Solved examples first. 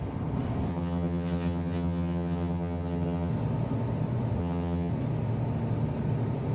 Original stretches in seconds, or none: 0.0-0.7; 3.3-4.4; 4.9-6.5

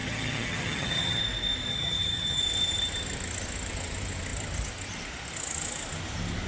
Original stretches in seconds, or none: 1.2-1.7; 2.4-6.5

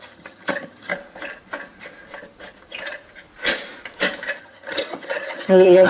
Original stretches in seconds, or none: 0.9-4.4